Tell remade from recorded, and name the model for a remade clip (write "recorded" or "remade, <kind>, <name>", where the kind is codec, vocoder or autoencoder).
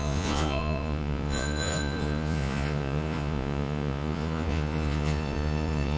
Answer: remade, vocoder, Vocos